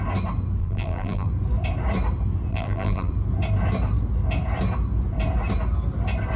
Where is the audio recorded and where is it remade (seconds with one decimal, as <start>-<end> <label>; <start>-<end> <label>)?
0.0-0.6 recorded; 0.6-1.3 remade; 1.3-2.5 recorded; 2.5-3.1 remade; 3.1-6.4 recorded